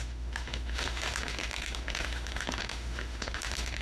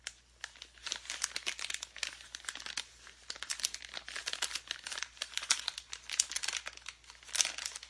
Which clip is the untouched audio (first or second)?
second